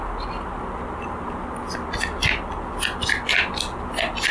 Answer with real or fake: real